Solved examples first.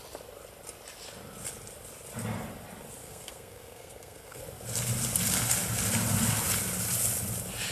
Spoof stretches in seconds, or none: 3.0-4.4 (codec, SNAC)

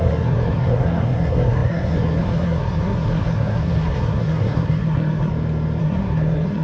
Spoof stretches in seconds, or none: 0.0-5.3 (codec, SNAC); 5.8-6.6

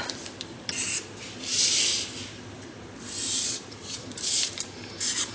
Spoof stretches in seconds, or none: none

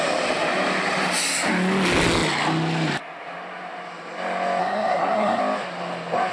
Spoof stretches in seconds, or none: 4.6-5.4 (codec, SNAC)